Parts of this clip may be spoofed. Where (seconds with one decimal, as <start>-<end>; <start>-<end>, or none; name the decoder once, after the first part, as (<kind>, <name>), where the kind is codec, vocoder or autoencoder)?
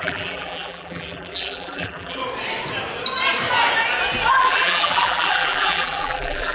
0.0-2.2 (vocoder, BigVGAN v2); 4.3-6.5